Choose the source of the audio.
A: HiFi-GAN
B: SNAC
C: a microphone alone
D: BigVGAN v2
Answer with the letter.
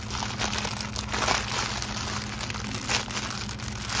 C